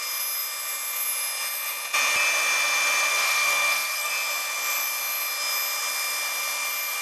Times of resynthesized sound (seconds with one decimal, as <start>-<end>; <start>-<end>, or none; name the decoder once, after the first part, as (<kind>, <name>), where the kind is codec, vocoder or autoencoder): 3.1-4.1 (codec, SNAC)